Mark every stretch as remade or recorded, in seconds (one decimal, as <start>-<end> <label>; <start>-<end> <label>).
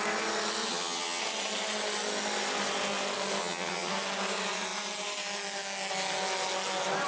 0.0-0.7 recorded; 0.7-1.2 remade; 1.2-3.4 recorded; 3.4-3.9 remade; 3.9-7.1 recorded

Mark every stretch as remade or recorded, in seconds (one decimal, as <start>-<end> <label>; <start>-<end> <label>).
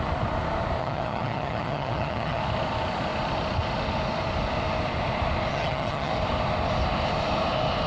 0.0-0.8 recorded; 0.8-2.4 remade; 2.4-5.5 recorded; 5.5-6.1 remade; 6.1-7.9 recorded